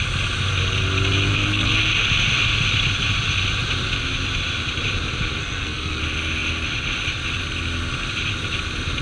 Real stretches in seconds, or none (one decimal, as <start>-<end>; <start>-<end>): 0.0-1.3; 1.8-5.4; 6.0-9.0